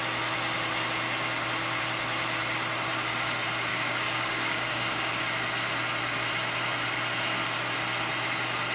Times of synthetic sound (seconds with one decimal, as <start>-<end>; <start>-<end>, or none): 3.7-5.2